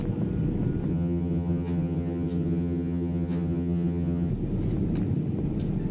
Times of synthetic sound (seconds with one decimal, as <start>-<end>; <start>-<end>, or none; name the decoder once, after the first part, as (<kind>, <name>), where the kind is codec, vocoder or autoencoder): 0.9-4.3 (vocoder, HiFi-GAN)